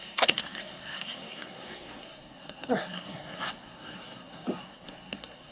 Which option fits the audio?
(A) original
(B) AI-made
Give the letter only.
B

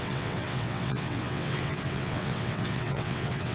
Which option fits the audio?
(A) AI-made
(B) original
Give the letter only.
A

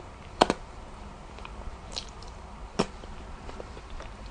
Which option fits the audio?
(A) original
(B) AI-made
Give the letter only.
A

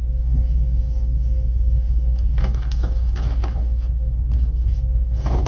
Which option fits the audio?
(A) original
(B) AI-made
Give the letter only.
B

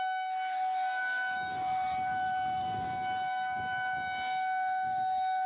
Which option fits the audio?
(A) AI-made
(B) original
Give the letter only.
A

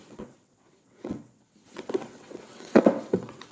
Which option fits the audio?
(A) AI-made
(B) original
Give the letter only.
A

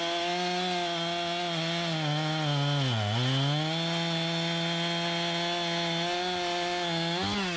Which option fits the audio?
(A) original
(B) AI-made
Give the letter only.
A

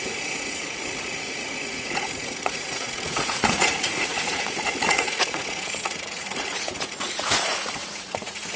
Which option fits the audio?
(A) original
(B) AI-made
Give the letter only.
B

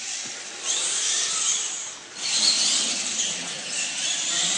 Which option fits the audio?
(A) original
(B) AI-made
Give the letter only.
B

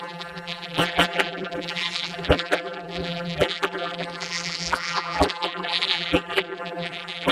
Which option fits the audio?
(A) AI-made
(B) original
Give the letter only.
A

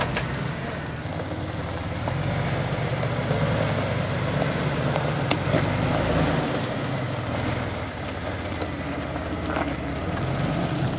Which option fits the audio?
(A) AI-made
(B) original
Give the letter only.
B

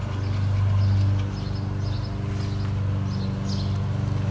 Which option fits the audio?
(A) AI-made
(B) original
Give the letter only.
B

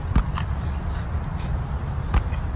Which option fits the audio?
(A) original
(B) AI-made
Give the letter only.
A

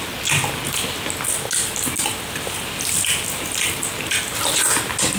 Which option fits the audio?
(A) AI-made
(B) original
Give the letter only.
B